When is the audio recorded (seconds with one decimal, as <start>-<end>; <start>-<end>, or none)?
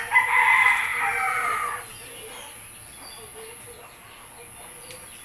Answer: 0.0-5.2